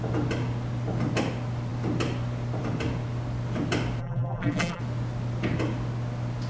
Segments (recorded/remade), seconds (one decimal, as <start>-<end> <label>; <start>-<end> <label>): 0.0-4.0 recorded; 4.0-4.8 remade; 4.8-6.5 recorded